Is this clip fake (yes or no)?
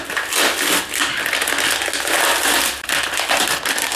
no